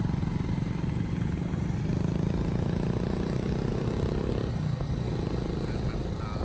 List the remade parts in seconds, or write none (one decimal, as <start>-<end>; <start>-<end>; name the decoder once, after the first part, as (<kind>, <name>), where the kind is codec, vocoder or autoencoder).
none